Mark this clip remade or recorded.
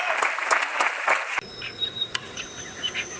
recorded